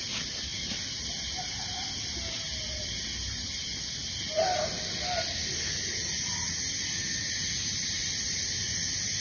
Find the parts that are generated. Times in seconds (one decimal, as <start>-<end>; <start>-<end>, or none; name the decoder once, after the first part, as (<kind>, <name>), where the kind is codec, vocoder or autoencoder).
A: none